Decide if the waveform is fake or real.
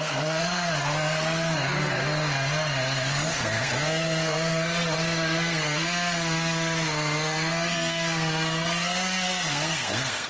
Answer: fake